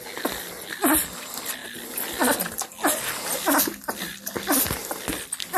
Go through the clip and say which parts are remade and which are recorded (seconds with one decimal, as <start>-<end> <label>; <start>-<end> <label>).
0.0-5.6 recorded

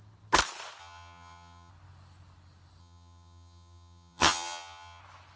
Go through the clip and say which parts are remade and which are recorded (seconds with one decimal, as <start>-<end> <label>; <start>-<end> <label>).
0.0-0.8 recorded; 0.8-1.7 remade; 1.7-2.8 recorded; 2.8-5.0 remade; 5.0-5.4 recorded